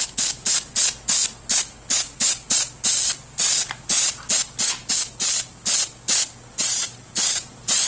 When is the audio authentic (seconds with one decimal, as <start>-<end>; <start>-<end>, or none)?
0.0-7.9